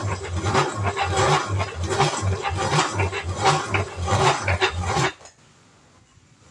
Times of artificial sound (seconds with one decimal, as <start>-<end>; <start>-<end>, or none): 3.9-6.5